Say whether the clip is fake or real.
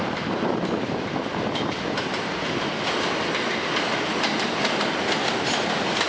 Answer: real